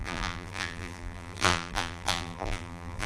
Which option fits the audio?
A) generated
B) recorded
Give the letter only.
A